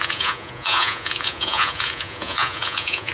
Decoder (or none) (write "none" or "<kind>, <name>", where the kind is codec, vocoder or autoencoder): vocoder, Vocos